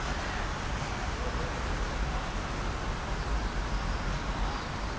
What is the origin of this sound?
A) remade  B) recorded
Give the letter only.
B